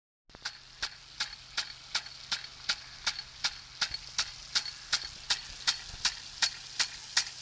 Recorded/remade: recorded